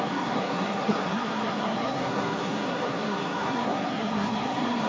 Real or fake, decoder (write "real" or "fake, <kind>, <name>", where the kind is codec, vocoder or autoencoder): fake, codec, SNAC